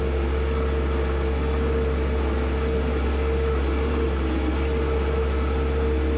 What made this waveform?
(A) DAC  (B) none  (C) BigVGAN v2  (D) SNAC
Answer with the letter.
B